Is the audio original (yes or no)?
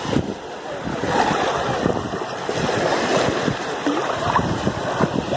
yes